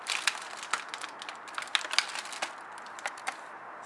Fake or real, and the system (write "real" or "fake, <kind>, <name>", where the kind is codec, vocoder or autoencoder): real